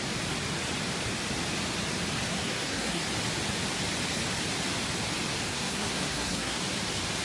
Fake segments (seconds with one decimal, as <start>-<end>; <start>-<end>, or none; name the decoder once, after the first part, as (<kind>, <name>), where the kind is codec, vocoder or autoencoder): 2.3-3.0 (codec, SNAC); 5.5-6.6